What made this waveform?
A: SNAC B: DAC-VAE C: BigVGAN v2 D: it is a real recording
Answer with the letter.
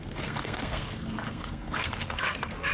A